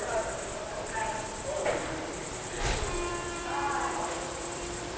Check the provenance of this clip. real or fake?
fake